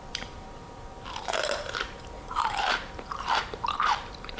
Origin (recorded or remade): remade